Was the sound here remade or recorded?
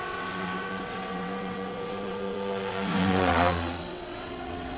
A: remade